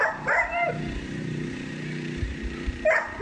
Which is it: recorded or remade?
remade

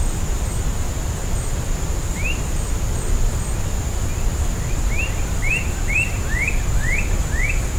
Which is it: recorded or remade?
recorded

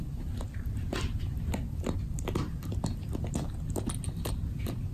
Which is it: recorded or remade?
recorded